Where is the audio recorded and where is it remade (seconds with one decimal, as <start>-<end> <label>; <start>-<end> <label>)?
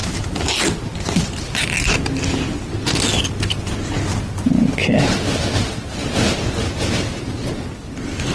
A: 0.0-8.3 recorded